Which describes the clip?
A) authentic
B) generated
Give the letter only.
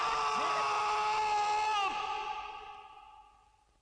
A